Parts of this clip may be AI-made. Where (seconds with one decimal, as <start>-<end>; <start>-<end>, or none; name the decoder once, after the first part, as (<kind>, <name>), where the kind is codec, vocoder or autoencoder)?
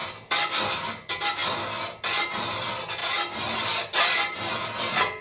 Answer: 0.0-5.2 (vocoder, BigVGAN v2)